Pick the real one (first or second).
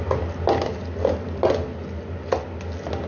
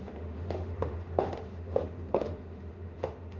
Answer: first